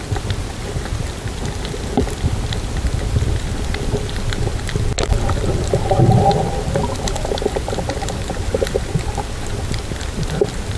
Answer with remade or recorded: recorded